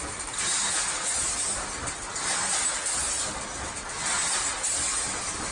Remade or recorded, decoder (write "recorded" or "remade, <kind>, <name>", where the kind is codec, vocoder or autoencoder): recorded